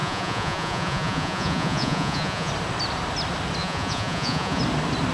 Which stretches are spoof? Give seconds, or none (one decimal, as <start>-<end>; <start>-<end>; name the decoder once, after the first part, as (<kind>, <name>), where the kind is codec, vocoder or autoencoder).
0.0-2.5 (vocoder, Vocos); 3.6-4.6